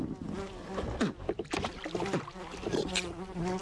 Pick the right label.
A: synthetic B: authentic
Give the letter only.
B